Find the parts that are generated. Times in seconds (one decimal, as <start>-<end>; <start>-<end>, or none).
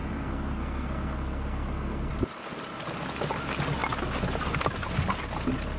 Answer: 0.0-2.1